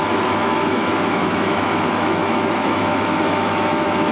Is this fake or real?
fake